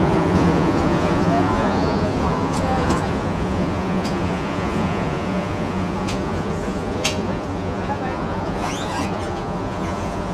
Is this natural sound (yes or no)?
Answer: no